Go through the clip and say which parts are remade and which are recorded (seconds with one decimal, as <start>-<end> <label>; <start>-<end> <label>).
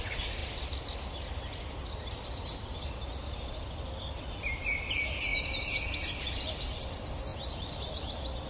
0.0-0.4 recorded; 0.4-4.2 remade; 4.2-5.3 recorded; 5.3-6.8 remade; 6.8-7.3 recorded; 7.3-8.1 remade; 8.1-8.5 recorded